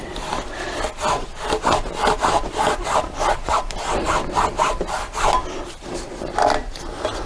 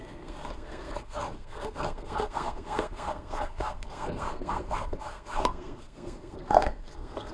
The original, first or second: first